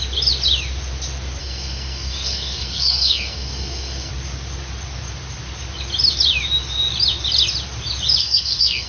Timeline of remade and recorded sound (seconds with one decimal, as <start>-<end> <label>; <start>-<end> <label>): 0.0-1.4 recorded; 1.4-4.1 remade; 4.1-8.2 recorded; 8.2-8.9 remade